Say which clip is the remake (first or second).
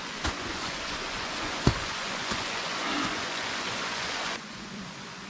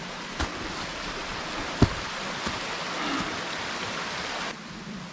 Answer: first